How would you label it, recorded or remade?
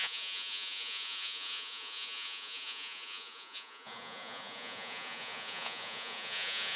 remade